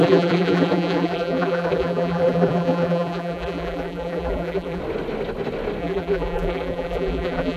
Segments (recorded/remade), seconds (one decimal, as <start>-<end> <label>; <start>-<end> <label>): 0.0-4.8 remade; 4.8-5.8 recorded; 5.8-7.6 remade

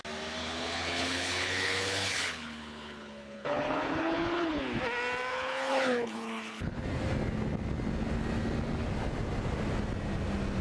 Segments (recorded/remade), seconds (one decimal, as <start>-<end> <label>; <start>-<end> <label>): 0.0-0.4 recorded; 0.4-4.6 remade; 4.6-5.3 recorded; 5.3-6.8 remade; 6.8-10.6 recorded

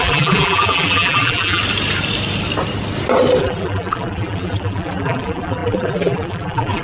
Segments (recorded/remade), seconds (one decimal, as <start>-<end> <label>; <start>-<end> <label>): 0.0-1.6 remade; 1.6-3.4 recorded; 3.4-6.8 remade

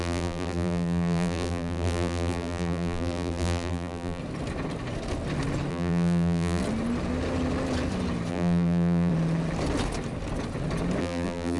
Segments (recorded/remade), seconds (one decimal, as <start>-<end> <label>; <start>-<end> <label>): 0.0-4.2 remade; 4.2-5.7 recorded; 5.7-6.6 remade; 6.6-8.3 recorded; 8.3-9.1 remade; 9.1-11.0 recorded; 11.0-11.6 remade